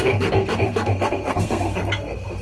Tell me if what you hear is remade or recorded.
remade